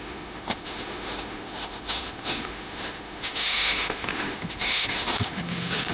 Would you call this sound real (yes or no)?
no